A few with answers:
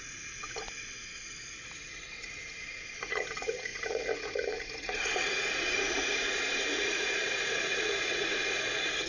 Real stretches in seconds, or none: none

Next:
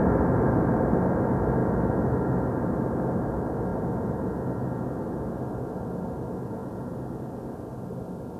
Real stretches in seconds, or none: 0.0-8.4